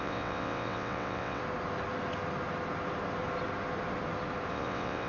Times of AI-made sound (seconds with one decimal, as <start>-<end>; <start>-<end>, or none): 0.0-1.4; 4.5-5.1